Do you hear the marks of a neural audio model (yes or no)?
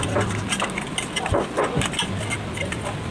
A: no